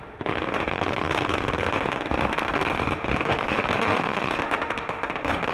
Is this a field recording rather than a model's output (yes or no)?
no